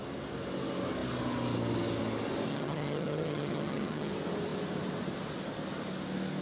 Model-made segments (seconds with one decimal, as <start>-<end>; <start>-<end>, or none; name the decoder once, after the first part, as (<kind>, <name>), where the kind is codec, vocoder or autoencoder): 2.5-4.1 (vocoder, HiFi-GAN)